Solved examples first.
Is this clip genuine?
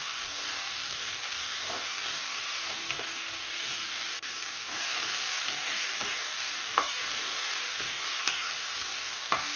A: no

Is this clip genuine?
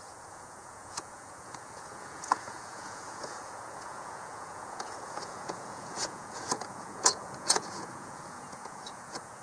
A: no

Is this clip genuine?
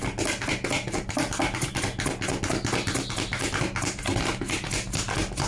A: yes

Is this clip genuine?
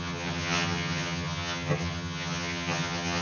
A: no